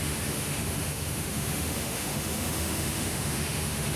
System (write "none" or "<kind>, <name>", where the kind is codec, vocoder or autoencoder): autoencoder, DAC-VAE